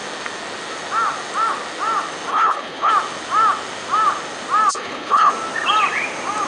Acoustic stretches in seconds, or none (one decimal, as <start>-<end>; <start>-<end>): 0.0-2.3; 2.9-4.7; 5.3-6.5